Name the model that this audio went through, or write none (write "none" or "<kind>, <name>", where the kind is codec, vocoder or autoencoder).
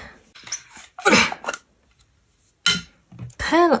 none